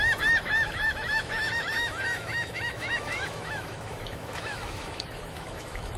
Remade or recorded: remade